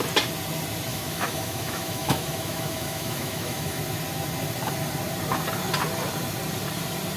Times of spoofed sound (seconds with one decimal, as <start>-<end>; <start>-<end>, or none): 0.9-3.8